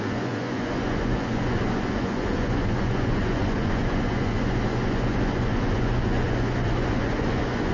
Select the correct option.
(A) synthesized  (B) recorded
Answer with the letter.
A